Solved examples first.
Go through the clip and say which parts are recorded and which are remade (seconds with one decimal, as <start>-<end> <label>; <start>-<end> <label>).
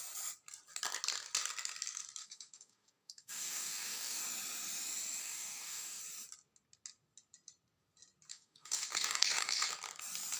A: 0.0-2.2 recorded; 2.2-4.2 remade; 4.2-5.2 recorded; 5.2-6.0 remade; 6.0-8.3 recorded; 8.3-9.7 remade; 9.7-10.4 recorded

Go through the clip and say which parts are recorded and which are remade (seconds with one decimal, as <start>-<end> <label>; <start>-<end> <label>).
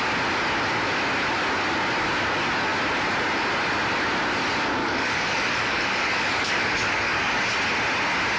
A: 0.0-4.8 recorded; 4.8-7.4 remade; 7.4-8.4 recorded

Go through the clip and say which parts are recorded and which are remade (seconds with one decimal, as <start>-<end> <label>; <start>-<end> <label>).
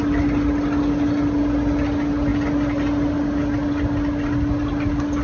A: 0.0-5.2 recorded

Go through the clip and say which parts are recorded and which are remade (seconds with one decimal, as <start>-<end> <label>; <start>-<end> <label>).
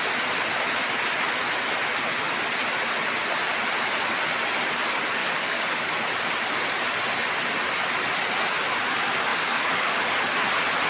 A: 0.0-5.2 recorded; 5.2-5.9 remade; 5.9-9.3 recorded; 9.3-10.0 remade; 10.0-10.9 recorded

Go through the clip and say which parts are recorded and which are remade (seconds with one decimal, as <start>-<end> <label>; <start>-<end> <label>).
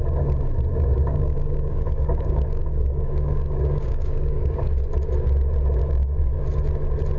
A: 0.0-0.7 recorded; 0.7-4.6 remade; 4.6-5.8 recorded; 5.8-6.4 remade; 6.4-7.2 recorded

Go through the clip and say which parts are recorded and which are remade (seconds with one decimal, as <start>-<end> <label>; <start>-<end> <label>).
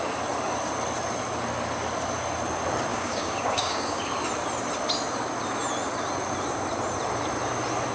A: 0.0-2.9 recorded; 2.9-4.0 remade; 4.0-7.9 recorded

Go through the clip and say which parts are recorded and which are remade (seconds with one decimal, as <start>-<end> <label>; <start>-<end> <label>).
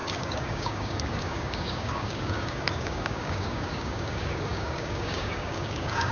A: 0.0-6.1 remade